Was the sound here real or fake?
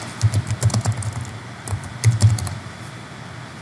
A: real